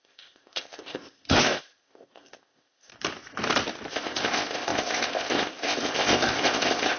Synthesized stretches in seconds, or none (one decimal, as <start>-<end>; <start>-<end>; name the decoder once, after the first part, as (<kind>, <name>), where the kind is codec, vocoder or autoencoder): 0.0-2.9 (codec, ZipCodec); 3.9-7.0